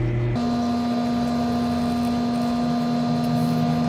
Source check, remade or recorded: recorded